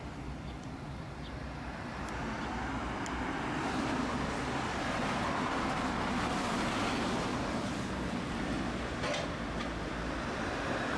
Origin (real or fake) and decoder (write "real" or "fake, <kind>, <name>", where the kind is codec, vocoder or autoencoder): real